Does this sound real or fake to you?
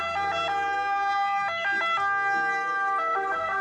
real